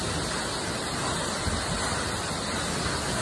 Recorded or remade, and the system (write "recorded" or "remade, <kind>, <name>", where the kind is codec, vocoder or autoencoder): recorded